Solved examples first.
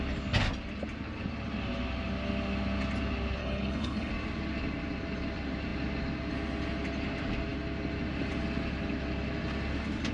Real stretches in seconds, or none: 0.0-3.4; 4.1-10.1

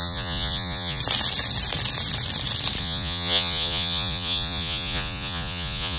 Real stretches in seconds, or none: 1.0-2.8